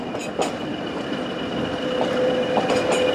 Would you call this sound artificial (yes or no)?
no